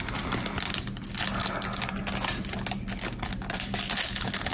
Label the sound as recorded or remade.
recorded